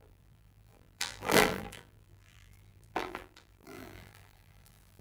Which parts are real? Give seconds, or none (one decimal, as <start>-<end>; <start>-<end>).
none